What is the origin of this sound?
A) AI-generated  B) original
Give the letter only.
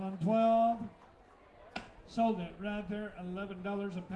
B